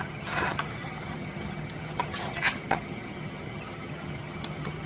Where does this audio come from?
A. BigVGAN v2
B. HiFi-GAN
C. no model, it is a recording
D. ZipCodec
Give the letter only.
B